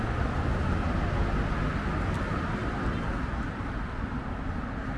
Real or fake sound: real